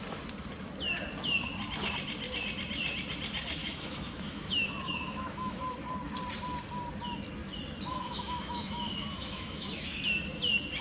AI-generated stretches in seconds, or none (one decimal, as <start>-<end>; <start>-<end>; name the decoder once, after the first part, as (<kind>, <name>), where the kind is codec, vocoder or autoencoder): 3.6-5.6 (autoencoder, DAC-VAE); 7.9-10.0